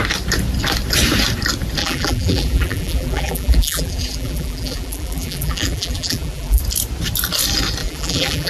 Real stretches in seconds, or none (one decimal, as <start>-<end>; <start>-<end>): 0.0-1.8; 6.6-7.8